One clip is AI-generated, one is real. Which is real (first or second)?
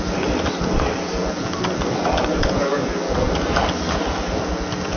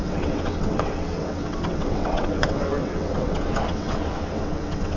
first